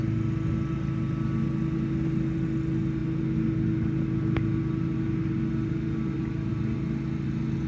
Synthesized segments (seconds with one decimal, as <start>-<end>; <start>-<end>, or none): none